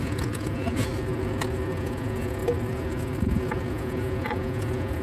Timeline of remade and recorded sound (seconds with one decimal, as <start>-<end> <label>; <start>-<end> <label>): 0.0-0.9 remade; 0.9-1.8 recorded; 1.8-2.4 remade; 2.4-3.7 recorded; 3.7-5.0 remade